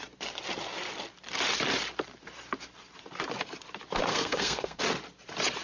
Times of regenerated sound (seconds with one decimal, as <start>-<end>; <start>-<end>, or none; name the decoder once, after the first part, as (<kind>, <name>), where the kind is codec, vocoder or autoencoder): 4.1-4.8 (codec, SNAC)